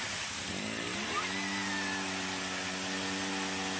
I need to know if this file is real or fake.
real